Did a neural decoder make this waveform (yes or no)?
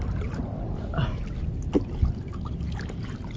no